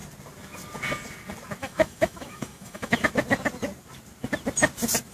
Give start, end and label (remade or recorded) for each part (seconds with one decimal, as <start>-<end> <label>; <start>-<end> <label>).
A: 0.0-1.6 recorded; 1.6-3.1 remade; 3.1-5.1 recorded